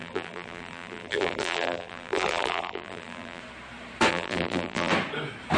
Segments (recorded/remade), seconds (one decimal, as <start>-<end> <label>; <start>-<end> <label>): 0.0-3.4 remade; 3.4-4.1 recorded; 4.1-4.9 remade; 4.9-5.6 recorded